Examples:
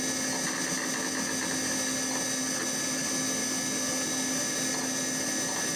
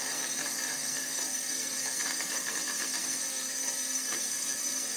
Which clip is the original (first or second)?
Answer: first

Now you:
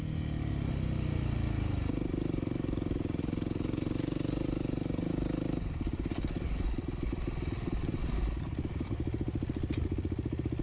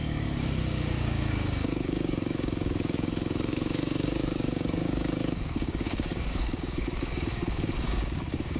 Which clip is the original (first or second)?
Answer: first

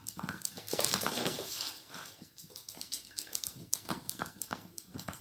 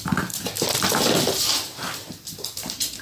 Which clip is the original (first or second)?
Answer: second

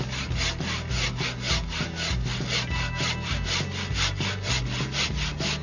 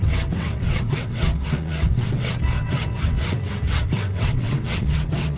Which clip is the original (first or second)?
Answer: first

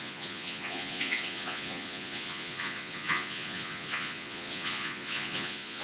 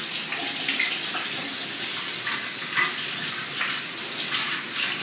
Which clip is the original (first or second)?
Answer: second